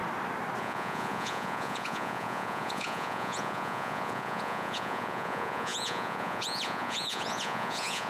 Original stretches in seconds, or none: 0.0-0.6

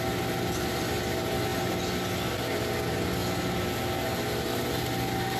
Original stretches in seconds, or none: 0.0-5.4

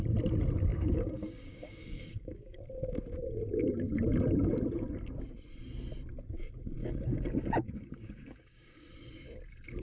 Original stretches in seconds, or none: 0.0-0.7; 2.6-6.8; 8.9-9.8

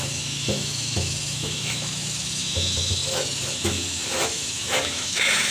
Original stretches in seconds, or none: none

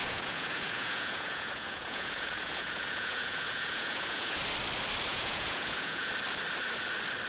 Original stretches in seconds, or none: 4.4-5.1; 6.1-7.3

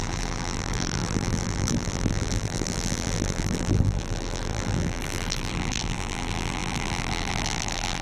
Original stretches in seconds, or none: none

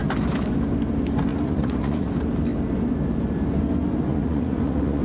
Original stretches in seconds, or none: 0.0-1.3; 2.1-4.1

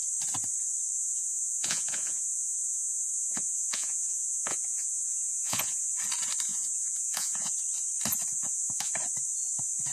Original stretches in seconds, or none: 0.0-1.0; 5.9-6.5; 7.5-8.3; 8.9-9.9